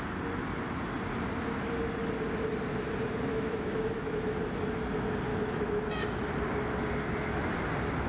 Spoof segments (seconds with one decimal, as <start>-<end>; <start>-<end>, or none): 3.3-4.3; 5.3-6.2